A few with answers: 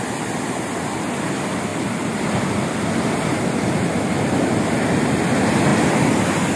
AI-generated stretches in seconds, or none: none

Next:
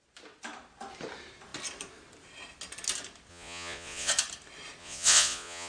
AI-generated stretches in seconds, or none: 3.3-4.1 (vocoder, Vocos); 4.8-5.7